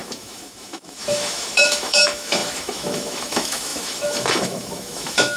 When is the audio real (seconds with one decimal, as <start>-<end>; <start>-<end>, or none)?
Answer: none